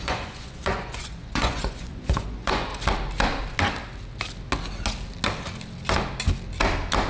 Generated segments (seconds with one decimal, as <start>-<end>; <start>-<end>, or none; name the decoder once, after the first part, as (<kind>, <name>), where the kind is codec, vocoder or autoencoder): 0.0-2.7 (vocoder, Vocos)